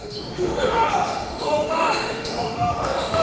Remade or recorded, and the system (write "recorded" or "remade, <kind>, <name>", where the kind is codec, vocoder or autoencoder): remade, autoencoder, DAC-VAE